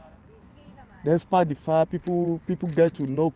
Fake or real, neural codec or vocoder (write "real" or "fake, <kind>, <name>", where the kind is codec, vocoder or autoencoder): fake, vocoder, Vocos